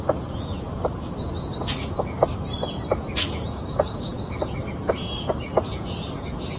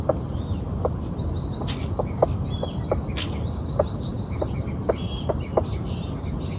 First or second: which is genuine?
second